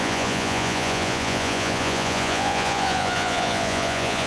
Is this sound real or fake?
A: fake